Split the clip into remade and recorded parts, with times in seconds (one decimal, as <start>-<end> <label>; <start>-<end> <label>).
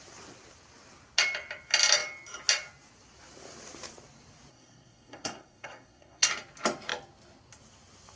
0.0-4.5 recorded; 4.5-6.3 remade; 6.3-8.2 recorded